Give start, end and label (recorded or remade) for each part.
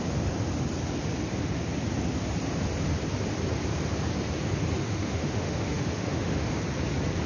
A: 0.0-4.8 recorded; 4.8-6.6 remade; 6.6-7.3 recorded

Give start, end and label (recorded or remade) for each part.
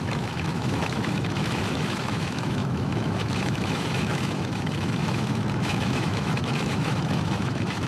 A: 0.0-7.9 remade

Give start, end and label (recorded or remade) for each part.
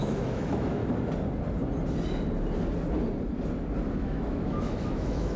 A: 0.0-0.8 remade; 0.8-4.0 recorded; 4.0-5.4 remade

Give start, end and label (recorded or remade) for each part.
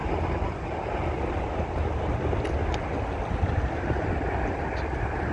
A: 0.0-5.3 recorded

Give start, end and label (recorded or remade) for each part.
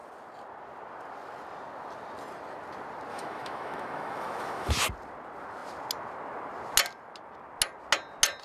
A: 0.0-3.1 recorded; 3.1-4.7 remade; 4.7-8.4 recorded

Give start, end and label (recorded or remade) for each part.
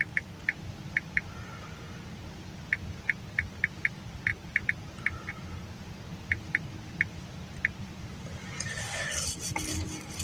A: 0.0-10.2 recorded